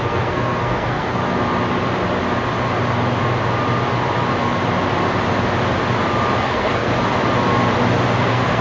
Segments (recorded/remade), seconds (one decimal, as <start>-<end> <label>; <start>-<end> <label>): 0.0-1.2 remade; 1.2-6.4 recorded; 6.4-6.9 remade; 6.9-8.2 recorded; 8.2-8.6 remade

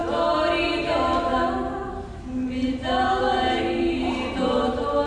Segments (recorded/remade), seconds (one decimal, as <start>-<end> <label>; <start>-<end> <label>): 0.0-0.6 recorded; 0.6-1.3 remade; 1.3-3.2 recorded; 3.2-5.1 remade

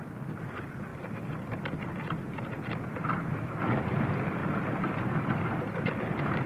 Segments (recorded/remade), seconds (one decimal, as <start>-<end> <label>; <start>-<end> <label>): 0.0-0.9 recorded; 0.9-1.8 remade; 1.8-6.5 recorded

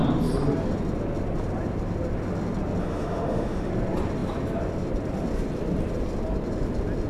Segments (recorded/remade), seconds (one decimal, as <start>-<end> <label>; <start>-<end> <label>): 0.0-2.8 recorded; 2.8-3.7 remade; 3.7-7.1 recorded